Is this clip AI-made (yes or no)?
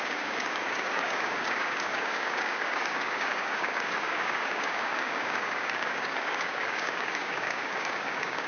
yes